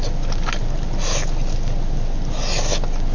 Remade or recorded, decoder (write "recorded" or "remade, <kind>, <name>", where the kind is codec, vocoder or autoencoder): recorded